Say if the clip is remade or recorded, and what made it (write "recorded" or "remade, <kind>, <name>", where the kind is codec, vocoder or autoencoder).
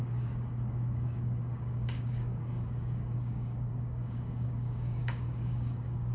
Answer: remade, codec, DAC